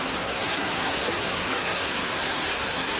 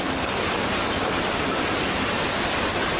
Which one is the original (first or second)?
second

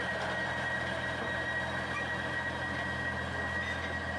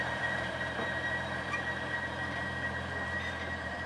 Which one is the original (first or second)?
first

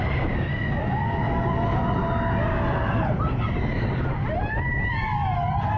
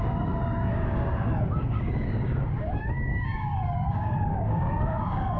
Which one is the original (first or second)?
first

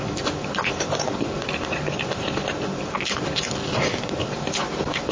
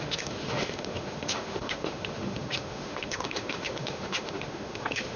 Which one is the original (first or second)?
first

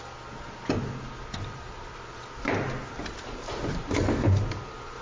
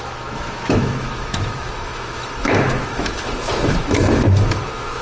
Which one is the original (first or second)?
first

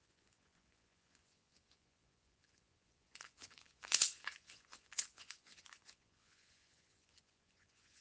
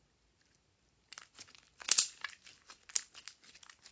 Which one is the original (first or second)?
second